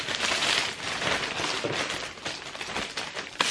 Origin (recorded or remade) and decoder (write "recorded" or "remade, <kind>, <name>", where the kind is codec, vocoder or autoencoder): recorded